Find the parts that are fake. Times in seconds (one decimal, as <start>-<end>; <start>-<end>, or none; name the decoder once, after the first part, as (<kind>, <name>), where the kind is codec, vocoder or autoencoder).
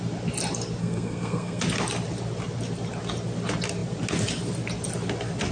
0.8-1.6 (codec, SNAC)